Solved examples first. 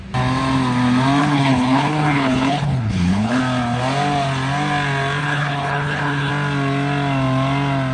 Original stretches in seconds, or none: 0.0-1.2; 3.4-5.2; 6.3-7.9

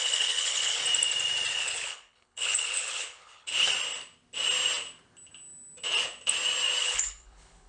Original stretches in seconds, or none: 0.8-1.5; 3.5-6.8